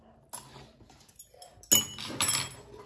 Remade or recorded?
recorded